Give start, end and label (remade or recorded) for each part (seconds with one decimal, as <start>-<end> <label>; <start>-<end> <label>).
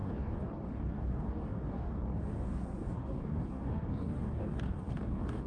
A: 0.0-5.5 remade